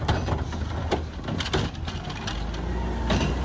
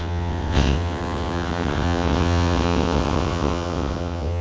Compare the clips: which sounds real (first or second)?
first